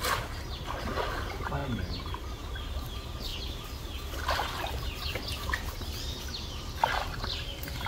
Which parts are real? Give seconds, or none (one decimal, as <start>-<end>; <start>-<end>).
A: 0.0-7.9